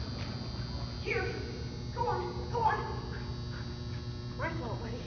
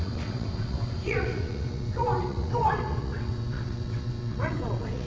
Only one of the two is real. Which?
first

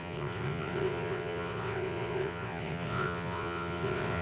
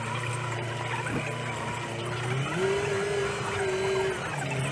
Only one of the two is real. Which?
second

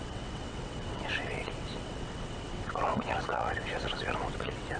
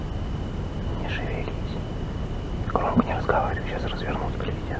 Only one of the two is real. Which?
second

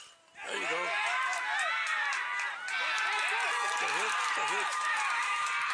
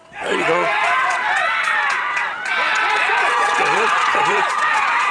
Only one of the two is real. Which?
first